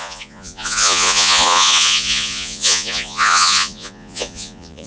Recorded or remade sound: remade